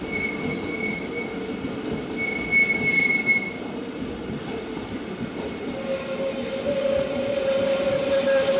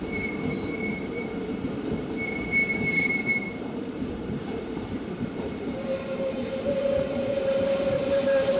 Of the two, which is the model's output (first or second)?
second